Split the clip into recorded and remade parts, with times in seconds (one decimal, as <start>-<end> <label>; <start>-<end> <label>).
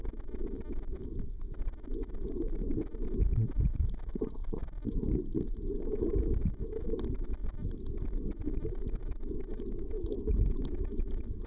0.0-9.0 recorded; 9.0-10.9 remade; 10.9-11.5 recorded